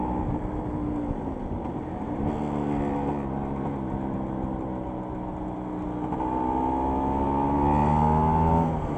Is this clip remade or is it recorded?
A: recorded